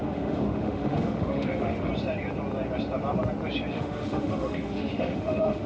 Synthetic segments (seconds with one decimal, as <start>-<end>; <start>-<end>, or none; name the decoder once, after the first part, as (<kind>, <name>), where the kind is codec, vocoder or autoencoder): 0.0-1.9 (autoencoder, DAC-VAE); 3.7-5.7